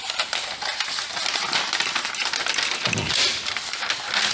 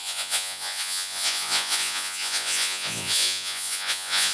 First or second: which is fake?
second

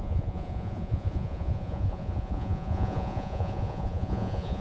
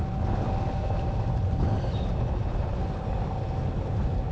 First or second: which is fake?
first